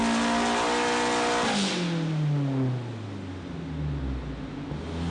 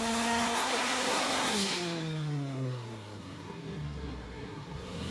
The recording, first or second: first